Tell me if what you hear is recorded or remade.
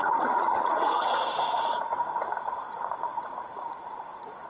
remade